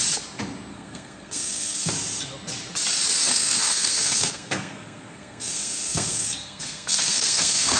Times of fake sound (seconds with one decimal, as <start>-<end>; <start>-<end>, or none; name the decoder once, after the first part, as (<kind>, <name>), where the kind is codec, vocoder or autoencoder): 0.7-1.9 (codec, SNAC); 3.3-7.8